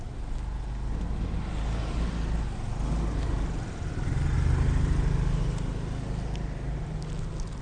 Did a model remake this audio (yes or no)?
no